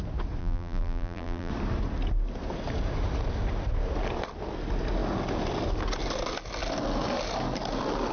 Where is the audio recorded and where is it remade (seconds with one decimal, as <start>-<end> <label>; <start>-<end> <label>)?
0.0-0.4 recorded; 0.4-1.5 remade; 1.5-8.1 recorded